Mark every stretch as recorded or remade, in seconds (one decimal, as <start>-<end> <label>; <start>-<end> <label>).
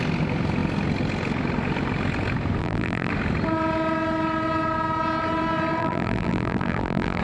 0.0-2.6 recorded; 2.6-3.1 remade; 3.1-5.8 recorded; 5.8-7.2 remade